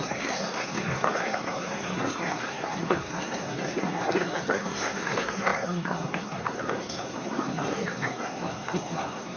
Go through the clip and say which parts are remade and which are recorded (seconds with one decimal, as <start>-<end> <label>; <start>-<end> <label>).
0.0-9.4 remade